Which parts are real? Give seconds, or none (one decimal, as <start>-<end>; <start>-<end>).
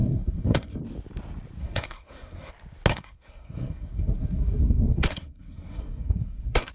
0.8-1.6; 2.5-2.9